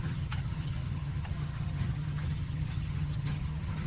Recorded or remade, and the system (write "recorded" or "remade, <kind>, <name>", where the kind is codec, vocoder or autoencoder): remade, vocoder, HiFi-GAN